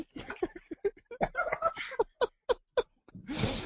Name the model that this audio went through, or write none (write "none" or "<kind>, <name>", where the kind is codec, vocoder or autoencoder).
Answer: none